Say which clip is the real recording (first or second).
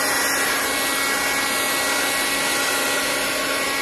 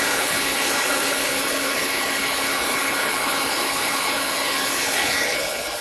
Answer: first